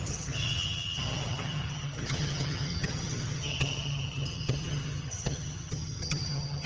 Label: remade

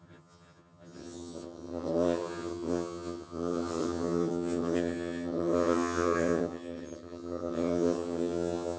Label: remade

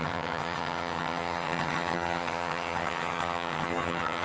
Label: remade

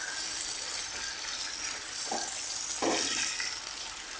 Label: recorded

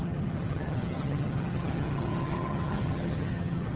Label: remade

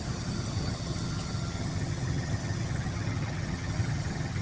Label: remade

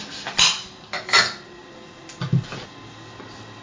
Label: recorded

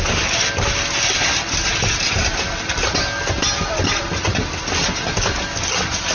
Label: recorded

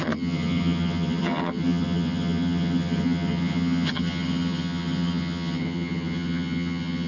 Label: remade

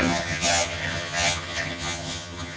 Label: remade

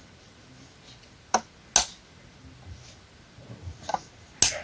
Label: recorded